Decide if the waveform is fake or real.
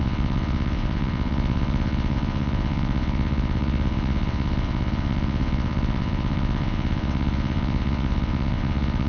fake